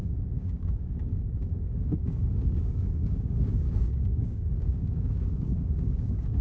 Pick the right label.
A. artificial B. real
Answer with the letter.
A